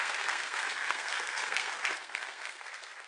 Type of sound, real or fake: fake